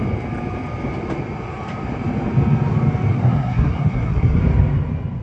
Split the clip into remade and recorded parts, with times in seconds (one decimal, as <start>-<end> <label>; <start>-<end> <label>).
0.0-3.1 recorded; 3.1-4.4 remade; 4.4-5.2 recorded